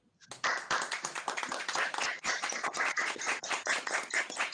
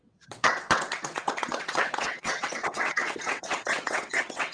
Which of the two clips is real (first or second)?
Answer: first